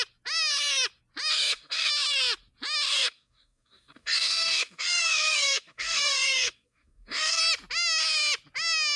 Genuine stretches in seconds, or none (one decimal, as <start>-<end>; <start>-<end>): 0.0-1.3; 1.9-2.9; 7.4-9.0